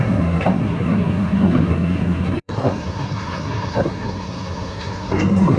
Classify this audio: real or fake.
fake